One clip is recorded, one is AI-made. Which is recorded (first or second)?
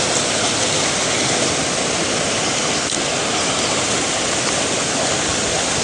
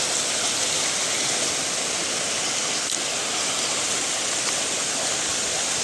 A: first